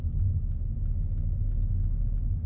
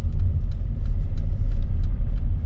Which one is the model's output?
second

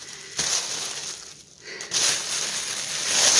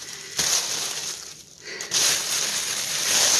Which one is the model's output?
second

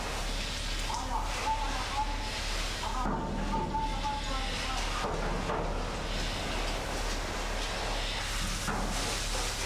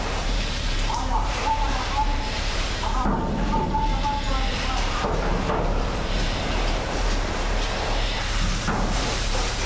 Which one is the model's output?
second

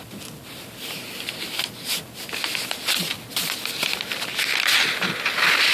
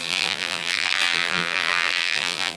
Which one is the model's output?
second